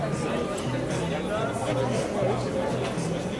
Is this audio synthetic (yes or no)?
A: no